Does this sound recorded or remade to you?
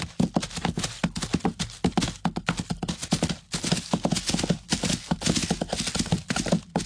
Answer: recorded